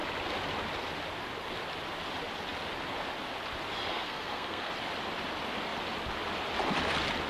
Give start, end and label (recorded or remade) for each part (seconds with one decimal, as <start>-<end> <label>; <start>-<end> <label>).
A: 0.0-3.9 recorded; 3.9-4.7 remade; 4.7-7.3 recorded